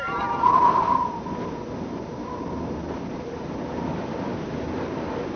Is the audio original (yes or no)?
yes